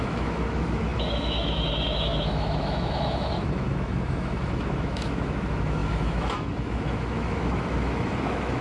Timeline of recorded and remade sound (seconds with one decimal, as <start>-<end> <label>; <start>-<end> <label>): 0.0-8.6 remade